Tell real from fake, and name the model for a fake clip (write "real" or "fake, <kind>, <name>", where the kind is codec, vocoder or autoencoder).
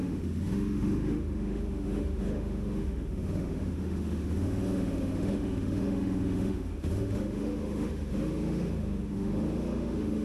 fake, autoencoder, DAC-VAE